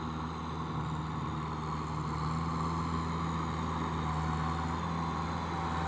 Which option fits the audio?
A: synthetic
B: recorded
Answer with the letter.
B